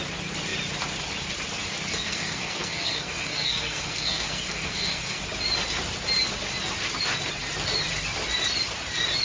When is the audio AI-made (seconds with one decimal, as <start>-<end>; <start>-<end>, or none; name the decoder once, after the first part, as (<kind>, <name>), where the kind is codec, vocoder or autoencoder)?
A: 1.9-5.2 (codec, SNAC)